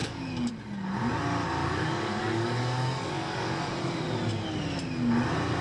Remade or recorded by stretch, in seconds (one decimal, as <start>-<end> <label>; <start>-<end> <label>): 0.0-0.5 remade; 0.5-1.6 recorded; 1.6-3.6 remade; 3.6-5.6 recorded